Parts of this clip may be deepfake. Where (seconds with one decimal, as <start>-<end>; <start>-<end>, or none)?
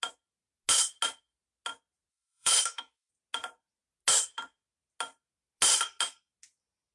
2.1-3.1